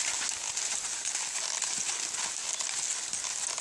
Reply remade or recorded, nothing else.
recorded